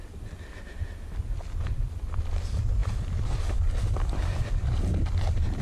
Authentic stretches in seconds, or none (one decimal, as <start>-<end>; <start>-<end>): 0.0-5.6